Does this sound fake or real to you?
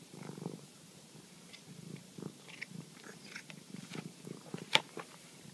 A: fake